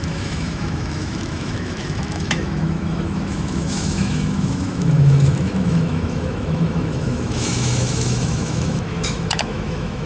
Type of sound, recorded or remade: remade